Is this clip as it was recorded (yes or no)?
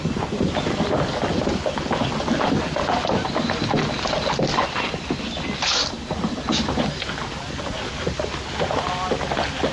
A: yes